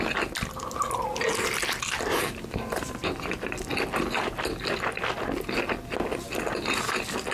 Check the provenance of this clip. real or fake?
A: real